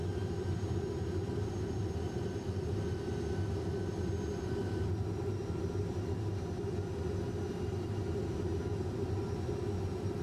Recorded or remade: recorded